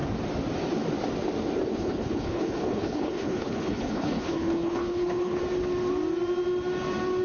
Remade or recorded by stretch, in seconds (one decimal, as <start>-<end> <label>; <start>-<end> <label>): 0.0-1.7 recorded; 1.7-5.4 remade; 5.4-7.2 recorded